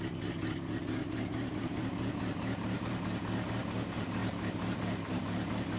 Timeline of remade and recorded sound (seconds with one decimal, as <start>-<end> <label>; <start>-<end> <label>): 0.0-1.0 recorded; 1.0-3.0 remade; 3.0-4.2 recorded; 4.2-4.8 remade; 4.8-5.8 recorded